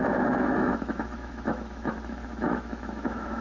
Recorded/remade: remade